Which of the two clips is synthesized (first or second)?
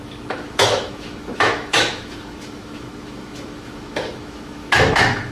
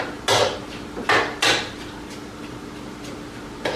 first